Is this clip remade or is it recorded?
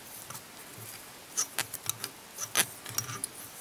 recorded